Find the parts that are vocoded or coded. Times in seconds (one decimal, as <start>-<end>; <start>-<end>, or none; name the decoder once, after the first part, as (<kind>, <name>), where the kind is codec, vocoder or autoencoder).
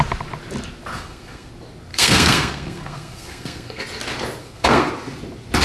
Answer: 0.9-1.5 (codec, SNAC); 1.9-3.8; 4.4-4.9